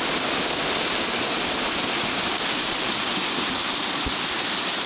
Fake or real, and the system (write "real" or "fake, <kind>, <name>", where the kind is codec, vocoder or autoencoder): fake, vocoder, BigVGAN v2